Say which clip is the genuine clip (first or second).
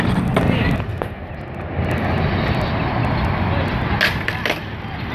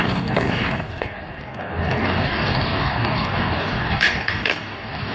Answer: first